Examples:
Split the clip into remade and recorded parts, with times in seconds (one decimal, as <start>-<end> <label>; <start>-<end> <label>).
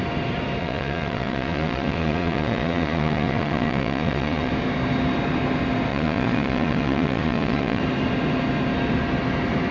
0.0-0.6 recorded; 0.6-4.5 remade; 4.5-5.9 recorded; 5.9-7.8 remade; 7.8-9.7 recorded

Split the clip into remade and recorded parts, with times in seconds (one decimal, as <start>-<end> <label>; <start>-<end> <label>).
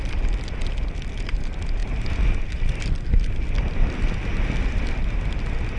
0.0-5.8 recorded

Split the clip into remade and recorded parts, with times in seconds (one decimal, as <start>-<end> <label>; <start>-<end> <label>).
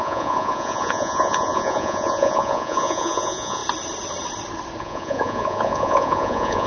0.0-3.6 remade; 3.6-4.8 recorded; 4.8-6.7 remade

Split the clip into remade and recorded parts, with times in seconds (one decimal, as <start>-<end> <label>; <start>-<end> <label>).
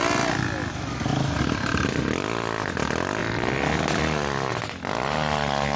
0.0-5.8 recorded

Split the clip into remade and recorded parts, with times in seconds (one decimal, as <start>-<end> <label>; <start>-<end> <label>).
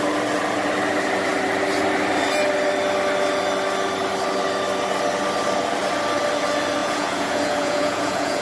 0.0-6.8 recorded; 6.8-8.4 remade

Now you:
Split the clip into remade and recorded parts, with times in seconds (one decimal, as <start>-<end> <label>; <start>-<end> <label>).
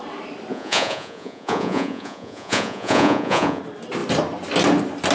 0.0-0.5 recorded; 0.5-3.6 remade; 3.6-5.1 recorded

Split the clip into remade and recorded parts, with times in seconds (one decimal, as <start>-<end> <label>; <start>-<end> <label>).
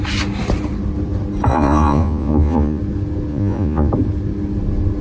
0.0-1.5 recorded; 1.5-2.8 remade; 2.8-3.3 recorded; 3.3-3.9 remade; 3.9-5.0 recorded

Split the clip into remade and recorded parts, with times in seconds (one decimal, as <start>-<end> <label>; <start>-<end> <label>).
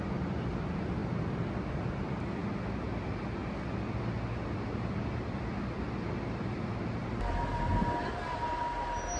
0.0-9.2 recorded